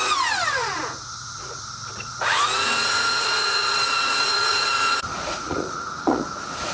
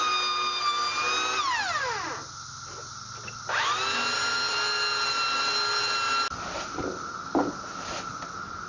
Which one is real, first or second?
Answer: second